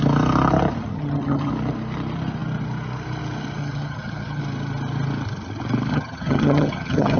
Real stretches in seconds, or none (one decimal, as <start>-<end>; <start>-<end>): 0.0-0.9; 1.5-3.6; 4.4-5.9